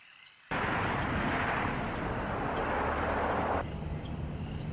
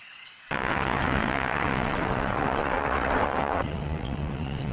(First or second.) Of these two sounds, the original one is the first